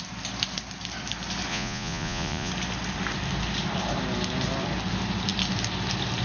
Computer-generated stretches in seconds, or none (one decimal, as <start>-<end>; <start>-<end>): 1.5-2.5